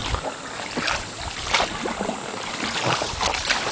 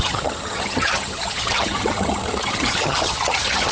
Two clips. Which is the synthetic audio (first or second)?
second